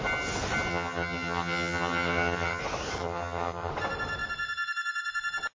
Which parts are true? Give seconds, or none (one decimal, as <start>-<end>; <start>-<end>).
0.0-0.7; 2.6-3.0; 3.7-5.6